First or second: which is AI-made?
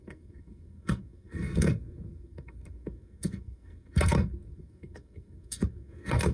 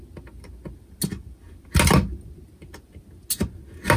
first